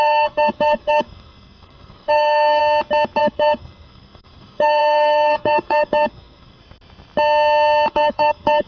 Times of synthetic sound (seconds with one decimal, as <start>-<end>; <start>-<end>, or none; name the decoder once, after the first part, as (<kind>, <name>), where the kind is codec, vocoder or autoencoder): 0.0-2.6 (codec, SNAC); 3.2-6.6; 7.9-8.7